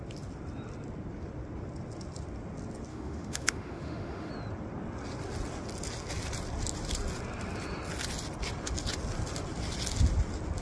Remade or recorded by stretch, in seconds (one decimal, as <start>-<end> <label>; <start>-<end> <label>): 0.0-2.9 recorded; 2.9-4.3 remade; 4.3-10.6 recorded